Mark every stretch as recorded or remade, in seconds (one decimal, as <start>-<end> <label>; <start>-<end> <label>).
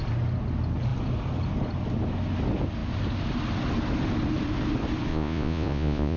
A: 0.0-5.1 recorded; 5.1-6.2 remade